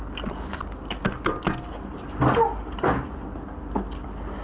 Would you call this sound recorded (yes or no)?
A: yes